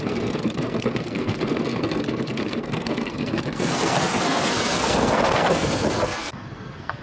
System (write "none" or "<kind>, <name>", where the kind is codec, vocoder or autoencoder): codec, SNAC